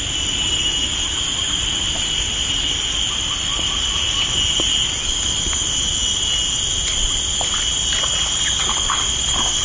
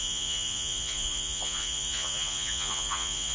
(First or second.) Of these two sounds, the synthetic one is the second